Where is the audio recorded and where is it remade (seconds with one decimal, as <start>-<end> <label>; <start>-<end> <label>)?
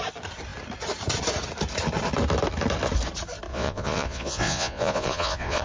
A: 0.0-3.5 recorded; 3.5-5.6 remade